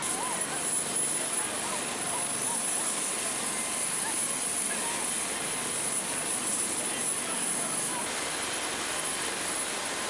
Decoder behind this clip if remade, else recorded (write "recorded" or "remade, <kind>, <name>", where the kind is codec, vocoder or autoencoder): recorded